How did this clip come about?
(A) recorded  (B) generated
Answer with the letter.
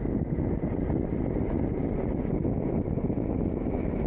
A